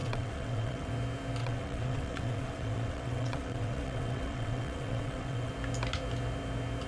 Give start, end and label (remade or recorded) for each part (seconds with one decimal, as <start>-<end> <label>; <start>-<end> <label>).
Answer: 0.0-0.9 remade; 0.9-1.4 recorded; 1.4-5.5 remade; 5.5-6.9 recorded